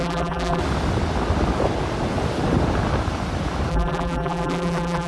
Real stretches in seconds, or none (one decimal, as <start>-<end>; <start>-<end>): 0.6-3.7